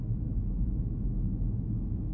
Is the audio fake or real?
fake